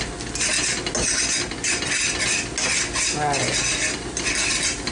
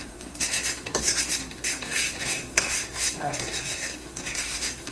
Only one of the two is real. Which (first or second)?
first